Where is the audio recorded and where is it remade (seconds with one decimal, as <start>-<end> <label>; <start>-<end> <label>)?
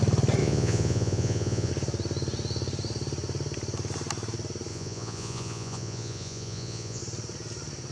0.0-0.4 recorded; 0.4-1.7 remade; 1.7-4.7 recorded; 4.7-7.0 remade; 7.0-7.9 recorded